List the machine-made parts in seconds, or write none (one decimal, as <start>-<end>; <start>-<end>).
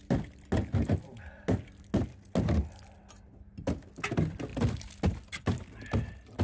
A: none